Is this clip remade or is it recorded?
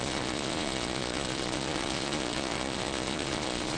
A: remade